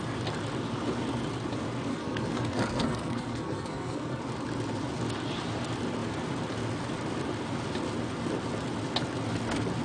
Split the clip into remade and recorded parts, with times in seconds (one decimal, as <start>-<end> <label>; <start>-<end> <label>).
0.0-1.9 recorded; 1.9-4.2 remade; 4.2-9.8 recorded